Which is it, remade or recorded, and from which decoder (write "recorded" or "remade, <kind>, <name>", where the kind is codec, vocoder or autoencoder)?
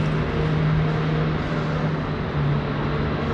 recorded